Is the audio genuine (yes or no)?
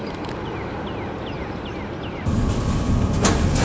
yes